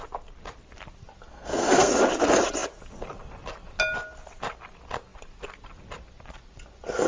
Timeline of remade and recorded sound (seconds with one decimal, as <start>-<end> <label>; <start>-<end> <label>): 0.0-1.3 recorded; 1.3-1.9 remade; 1.9-7.1 recorded